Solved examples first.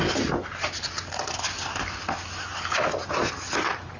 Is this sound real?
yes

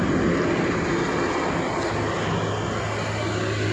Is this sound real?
yes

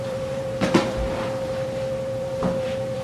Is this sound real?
no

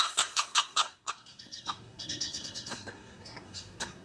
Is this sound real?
no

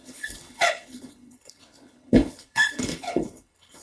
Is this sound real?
no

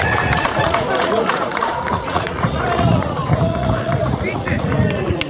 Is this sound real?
no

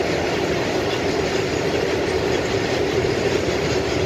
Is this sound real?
yes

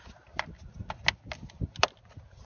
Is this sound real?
yes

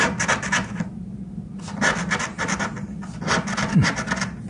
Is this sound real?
yes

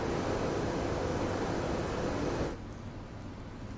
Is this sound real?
yes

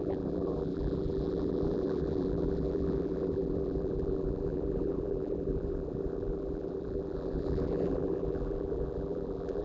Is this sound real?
no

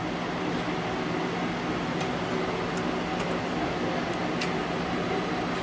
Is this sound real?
yes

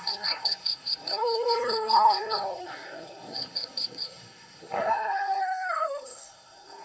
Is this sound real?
no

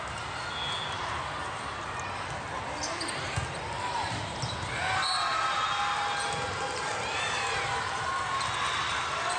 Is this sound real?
yes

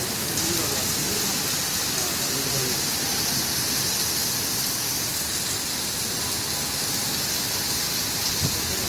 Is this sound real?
yes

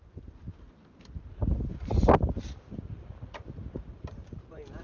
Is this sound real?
yes